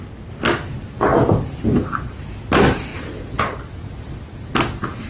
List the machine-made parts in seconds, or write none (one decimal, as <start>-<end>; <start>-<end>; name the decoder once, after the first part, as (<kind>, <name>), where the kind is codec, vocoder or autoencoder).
none